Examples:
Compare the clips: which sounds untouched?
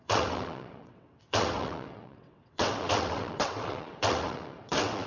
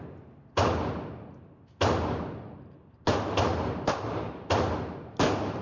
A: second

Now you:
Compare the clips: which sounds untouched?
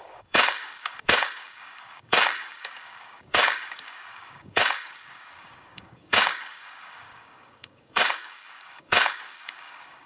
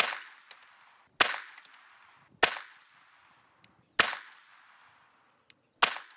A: second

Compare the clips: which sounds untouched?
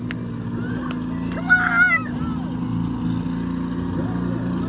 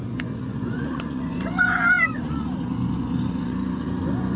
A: first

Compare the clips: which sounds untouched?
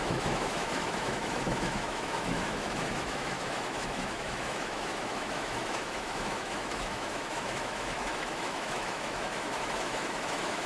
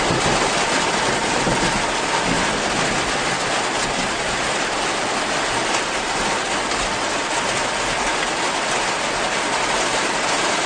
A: second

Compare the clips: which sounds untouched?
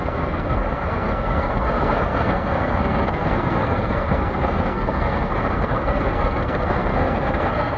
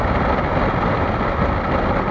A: second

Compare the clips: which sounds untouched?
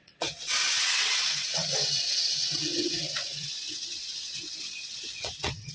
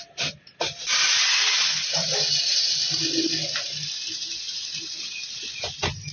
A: second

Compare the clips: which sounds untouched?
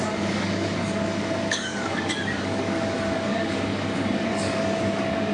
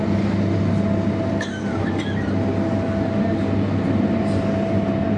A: second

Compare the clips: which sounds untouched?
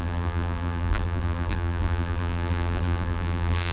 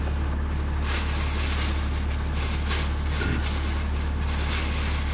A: second